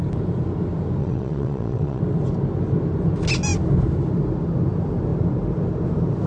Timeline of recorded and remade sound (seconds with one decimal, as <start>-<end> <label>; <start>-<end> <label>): 0.0-1.0 recorded; 1.0-2.0 remade; 2.0-6.3 recorded